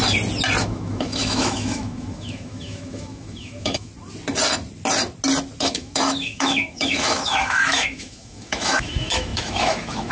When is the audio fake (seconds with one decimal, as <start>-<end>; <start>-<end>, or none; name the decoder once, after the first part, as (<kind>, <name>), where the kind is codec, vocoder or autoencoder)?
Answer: 0.6-3.9 (autoencoder, DAC-VAE); 5.6-10.1